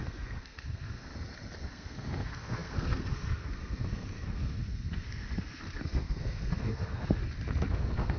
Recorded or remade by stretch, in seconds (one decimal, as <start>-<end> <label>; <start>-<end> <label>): 0.0-1.1 remade; 1.1-1.6 recorded; 1.6-7.2 remade; 7.2-7.7 recorded; 7.7-8.2 remade